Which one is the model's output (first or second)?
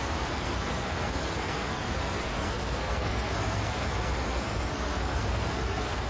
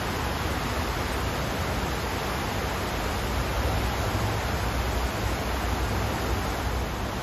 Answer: first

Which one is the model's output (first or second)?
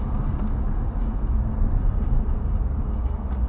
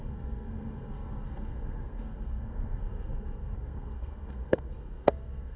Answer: second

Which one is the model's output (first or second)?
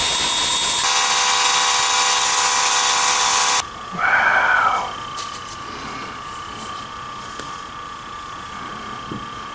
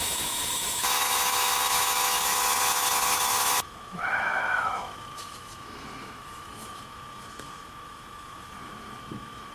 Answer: second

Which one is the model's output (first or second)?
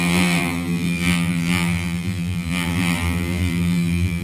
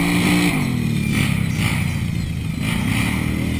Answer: first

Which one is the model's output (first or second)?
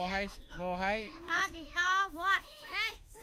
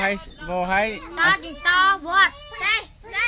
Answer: first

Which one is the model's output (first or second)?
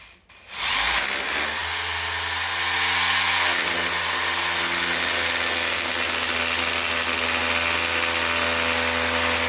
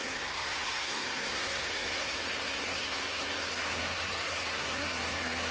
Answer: second